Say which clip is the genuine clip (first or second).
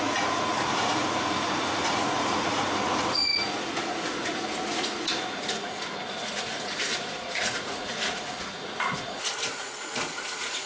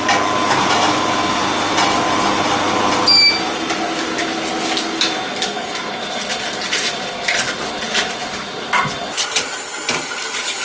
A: second